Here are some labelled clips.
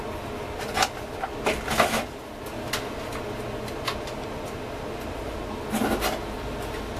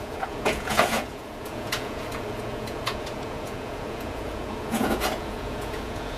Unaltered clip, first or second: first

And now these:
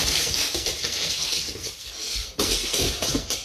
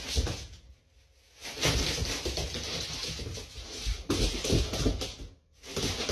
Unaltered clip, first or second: second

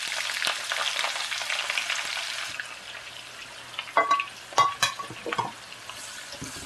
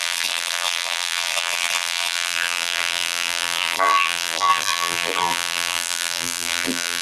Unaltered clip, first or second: first